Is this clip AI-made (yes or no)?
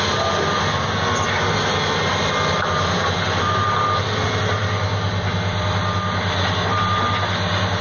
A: no